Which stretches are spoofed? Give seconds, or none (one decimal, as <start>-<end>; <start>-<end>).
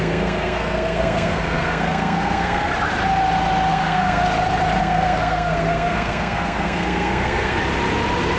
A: 0.0-2.7; 3.7-4.2; 4.8-7.6